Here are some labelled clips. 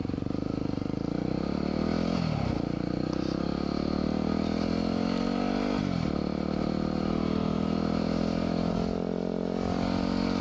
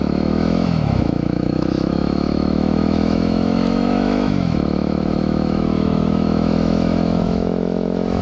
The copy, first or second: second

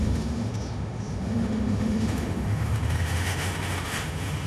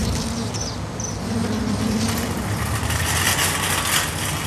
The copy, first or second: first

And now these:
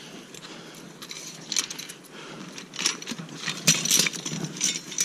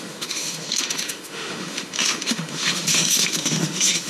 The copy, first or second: second